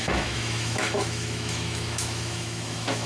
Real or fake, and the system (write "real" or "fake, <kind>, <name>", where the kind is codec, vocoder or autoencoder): fake, autoencoder, DAC-VAE